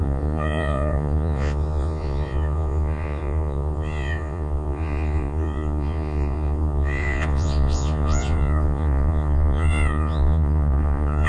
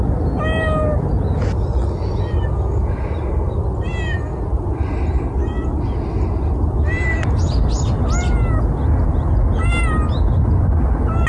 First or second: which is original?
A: second